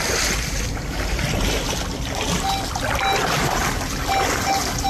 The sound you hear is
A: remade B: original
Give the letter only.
B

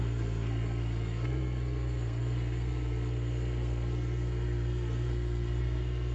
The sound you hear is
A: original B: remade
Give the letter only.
B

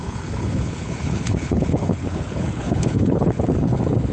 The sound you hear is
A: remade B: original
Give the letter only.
A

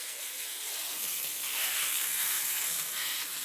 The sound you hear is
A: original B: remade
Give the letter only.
B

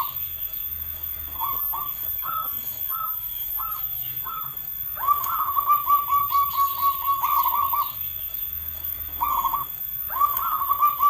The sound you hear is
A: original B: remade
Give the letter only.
B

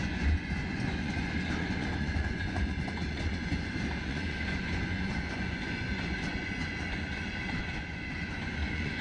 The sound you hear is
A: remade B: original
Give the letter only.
A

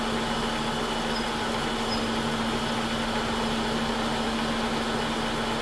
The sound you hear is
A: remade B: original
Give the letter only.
B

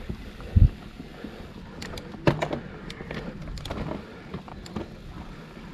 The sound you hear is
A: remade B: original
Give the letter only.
B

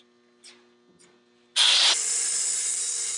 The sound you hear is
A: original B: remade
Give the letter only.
A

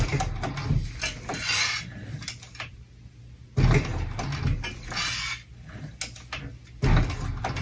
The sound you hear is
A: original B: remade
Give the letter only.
A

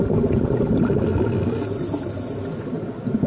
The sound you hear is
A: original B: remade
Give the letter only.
A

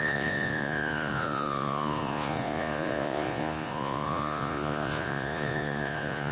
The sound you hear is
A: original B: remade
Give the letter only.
B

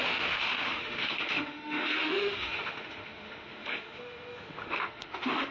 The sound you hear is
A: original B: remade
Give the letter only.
B